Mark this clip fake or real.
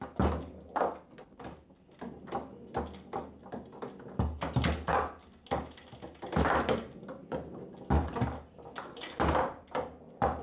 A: real